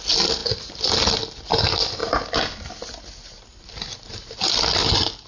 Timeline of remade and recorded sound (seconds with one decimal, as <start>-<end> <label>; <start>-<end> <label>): 0.0-5.3 recorded